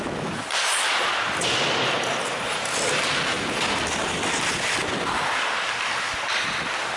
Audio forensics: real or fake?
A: real